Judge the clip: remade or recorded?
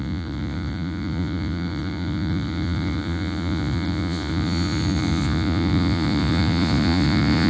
remade